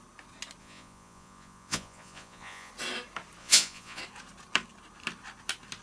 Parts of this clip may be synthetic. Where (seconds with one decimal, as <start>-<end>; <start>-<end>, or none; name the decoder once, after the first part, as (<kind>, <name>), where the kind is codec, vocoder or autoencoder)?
0.6-2.7 (vocoder, Vocos); 3.4-4.0